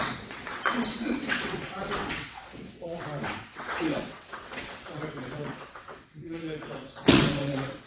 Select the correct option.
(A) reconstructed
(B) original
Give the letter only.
A